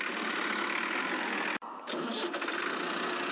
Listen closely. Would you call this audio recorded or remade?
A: recorded